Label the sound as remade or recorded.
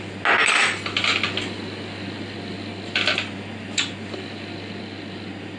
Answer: recorded